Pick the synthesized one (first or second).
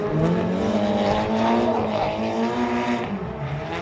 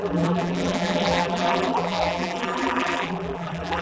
second